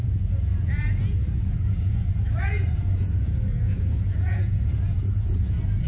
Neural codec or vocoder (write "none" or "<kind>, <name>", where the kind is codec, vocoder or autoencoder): vocoder, Vocos